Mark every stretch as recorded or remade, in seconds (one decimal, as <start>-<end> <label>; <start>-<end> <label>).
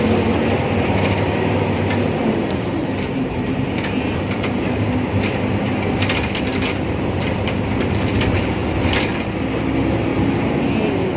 0.0-2.8 recorded; 2.8-4.9 remade; 4.9-6.5 recorded; 6.5-9.2 remade; 9.2-10.1 recorded; 10.1-10.6 remade; 10.6-11.2 recorded